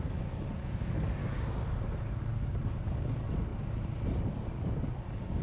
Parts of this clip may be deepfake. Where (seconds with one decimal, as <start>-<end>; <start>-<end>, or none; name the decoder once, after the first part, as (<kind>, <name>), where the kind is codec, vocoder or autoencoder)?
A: 0.0-1.2 (codec, DAC); 2.2-3.5; 4.3-5.4